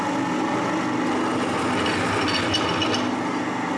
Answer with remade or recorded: recorded